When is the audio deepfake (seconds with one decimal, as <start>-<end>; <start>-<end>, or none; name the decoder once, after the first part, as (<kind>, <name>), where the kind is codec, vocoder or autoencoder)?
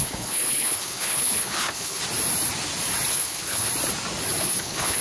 0.0-2.0 (codec, HILCodec); 3.1-3.7; 4.4-5.0